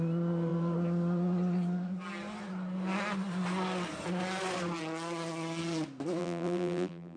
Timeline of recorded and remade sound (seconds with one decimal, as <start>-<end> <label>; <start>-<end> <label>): 0.0-6.2 recorded; 6.2-7.2 remade